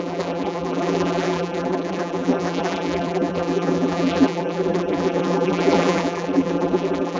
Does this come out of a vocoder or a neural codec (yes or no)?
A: yes